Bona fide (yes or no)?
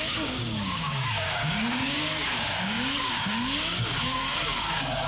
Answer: no